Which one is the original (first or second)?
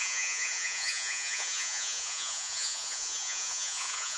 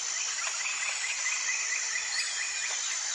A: second